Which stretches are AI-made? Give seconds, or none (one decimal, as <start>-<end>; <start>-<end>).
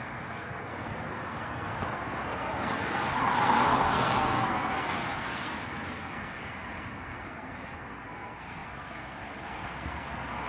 0.0-10.5